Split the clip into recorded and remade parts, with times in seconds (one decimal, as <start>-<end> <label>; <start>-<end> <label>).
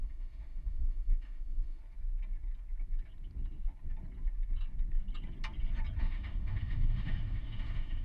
0.0-1.8 remade; 1.8-6.0 recorded; 6.0-8.0 remade